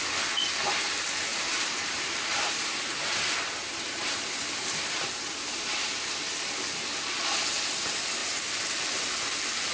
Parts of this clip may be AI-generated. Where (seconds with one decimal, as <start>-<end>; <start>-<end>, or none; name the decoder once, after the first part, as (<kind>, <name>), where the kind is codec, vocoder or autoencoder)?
1.3-6.5 (vocoder, BigVGAN v2); 8.2-8.7